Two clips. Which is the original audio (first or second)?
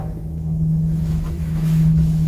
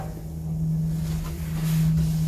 second